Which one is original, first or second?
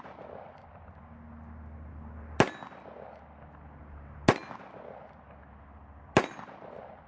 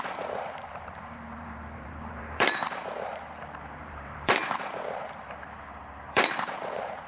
first